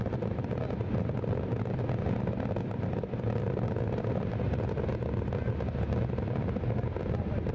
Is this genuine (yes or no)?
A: yes